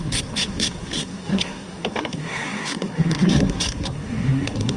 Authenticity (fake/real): fake